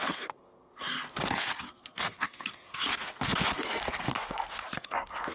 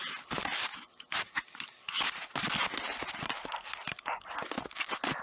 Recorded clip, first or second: second